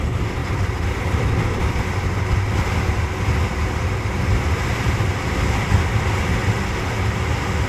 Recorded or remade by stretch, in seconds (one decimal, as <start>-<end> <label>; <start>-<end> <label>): 0.0-6.4 remade; 6.4-7.7 recorded

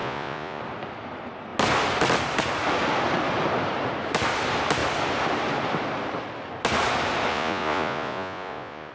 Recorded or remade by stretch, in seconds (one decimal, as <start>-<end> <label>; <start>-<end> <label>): 0.0-0.6 remade; 0.6-7.3 recorded; 7.3-8.9 remade

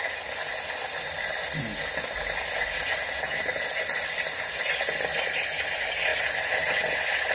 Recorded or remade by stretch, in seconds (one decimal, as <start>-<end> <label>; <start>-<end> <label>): 0.0-7.3 recorded

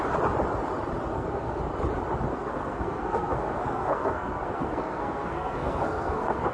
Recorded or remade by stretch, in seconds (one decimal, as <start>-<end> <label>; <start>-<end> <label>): 0.0-1.1 recorded; 1.1-1.6 remade; 1.6-2.3 recorded; 2.3-6.5 remade

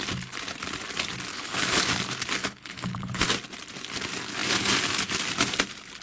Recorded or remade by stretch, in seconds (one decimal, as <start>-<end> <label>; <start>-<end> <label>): 0.0-1.3 recorded; 1.3-1.8 remade; 1.8-2.4 recorded; 2.4-3.2 remade; 3.2-6.0 recorded